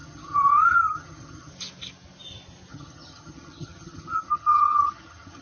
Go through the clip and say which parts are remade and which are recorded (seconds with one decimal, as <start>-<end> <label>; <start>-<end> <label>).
0.0-1.5 remade; 1.5-2.7 recorded; 2.7-5.4 remade